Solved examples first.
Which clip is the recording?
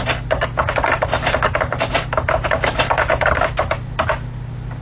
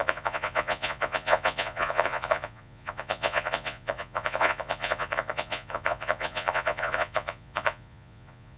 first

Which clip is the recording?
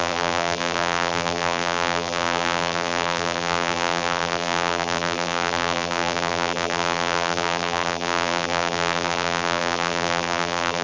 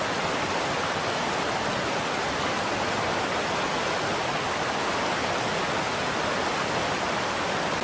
second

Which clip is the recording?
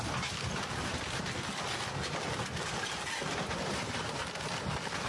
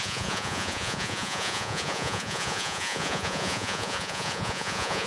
first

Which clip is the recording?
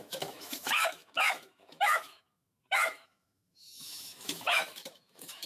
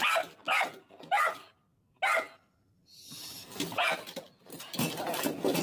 second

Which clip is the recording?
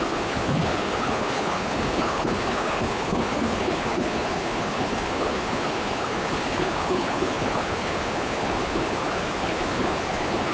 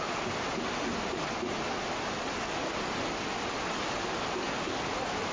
second